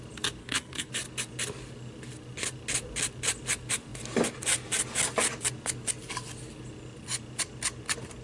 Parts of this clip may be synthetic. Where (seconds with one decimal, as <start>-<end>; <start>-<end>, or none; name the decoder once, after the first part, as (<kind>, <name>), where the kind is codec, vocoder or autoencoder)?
0.4-0.9 (codec, SNAC)